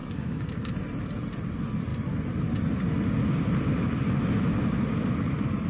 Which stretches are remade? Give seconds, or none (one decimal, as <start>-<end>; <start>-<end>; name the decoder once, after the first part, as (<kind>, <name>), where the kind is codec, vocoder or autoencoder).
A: 0.0-0.7 (codec, DAC)